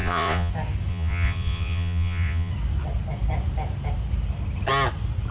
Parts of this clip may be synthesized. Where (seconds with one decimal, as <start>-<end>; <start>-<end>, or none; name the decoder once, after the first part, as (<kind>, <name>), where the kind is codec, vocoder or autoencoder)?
0.0-0.5 (vocoder, Vocos); 0.9-2.5